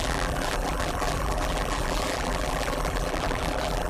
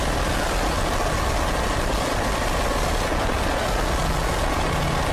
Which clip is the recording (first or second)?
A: second